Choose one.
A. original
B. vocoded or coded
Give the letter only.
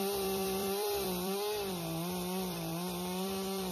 B